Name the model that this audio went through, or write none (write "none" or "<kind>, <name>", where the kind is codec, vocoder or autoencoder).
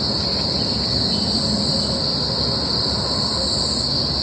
none